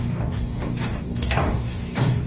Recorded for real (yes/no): no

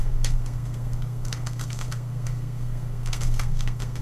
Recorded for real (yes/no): no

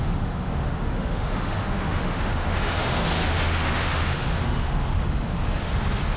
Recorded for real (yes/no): no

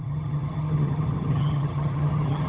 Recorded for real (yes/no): no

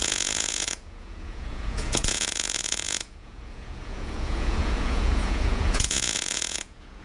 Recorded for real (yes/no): no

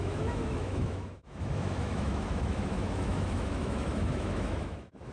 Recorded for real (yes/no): no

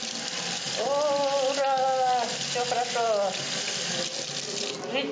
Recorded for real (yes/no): yes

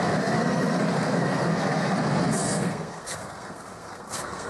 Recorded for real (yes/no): no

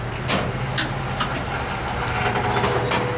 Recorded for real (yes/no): yes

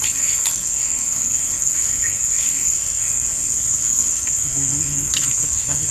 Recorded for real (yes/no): no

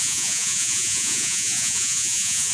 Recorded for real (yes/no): no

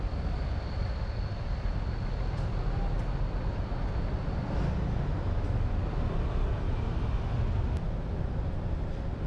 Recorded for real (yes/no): yes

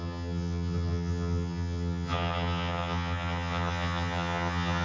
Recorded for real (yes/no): no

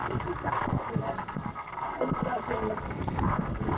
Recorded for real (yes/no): no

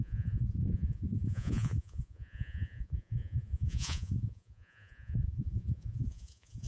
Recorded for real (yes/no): no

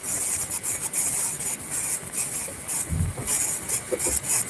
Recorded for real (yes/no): yes